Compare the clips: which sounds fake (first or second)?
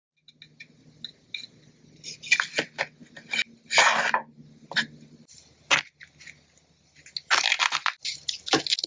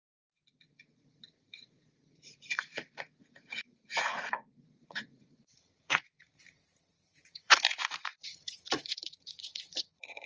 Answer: second